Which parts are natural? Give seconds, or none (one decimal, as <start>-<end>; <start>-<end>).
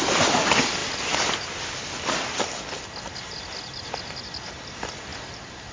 0.0-5.7